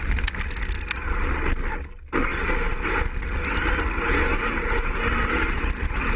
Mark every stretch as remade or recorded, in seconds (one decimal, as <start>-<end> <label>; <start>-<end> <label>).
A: 0.0-6.2 recorded